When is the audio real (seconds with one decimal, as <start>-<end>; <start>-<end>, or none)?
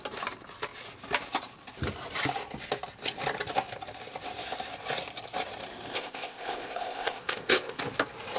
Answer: 0.0-5.9; 7.8-8.4